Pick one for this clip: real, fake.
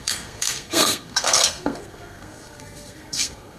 fake